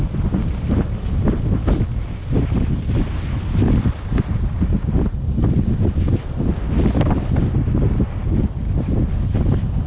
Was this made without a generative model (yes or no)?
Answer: yes